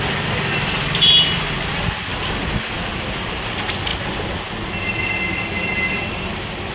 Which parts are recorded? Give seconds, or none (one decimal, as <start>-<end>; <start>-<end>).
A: 0.0-6.7